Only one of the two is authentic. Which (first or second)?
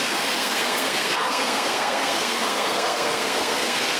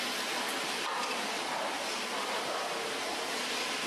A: second